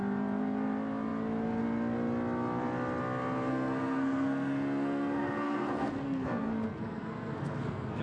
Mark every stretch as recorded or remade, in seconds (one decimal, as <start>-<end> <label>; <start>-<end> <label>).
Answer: 0.0-3.5 recorded; 3.5-8.0 remade